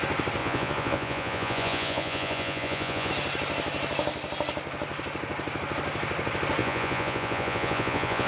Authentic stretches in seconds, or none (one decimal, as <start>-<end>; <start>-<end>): 0.0-0.4; 3.1-6.6